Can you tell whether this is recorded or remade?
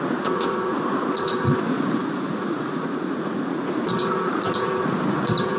remade